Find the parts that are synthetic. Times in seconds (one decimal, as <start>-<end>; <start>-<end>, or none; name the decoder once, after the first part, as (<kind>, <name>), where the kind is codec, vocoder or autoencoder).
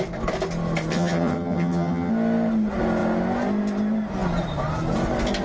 0.9-2.1 (vocoder, HiFi-GAN)